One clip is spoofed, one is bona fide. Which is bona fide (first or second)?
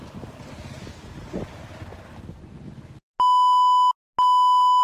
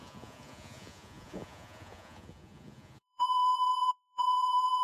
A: first